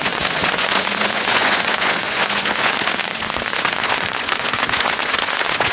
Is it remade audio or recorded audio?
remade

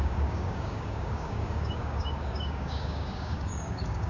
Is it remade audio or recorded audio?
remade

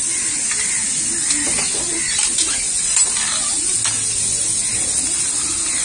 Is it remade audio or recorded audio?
recorded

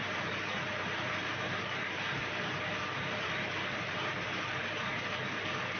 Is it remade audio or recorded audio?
remade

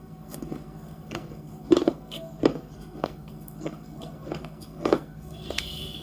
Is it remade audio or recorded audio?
remade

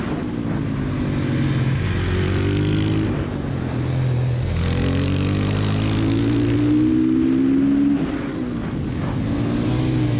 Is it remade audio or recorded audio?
recorded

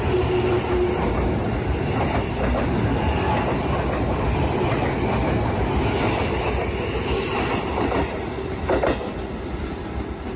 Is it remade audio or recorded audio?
recorded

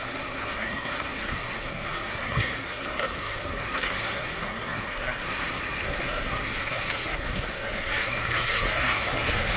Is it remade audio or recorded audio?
remade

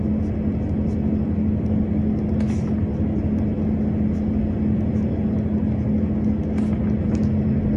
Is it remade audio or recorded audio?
recorded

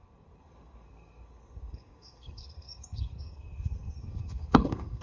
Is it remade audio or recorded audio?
remade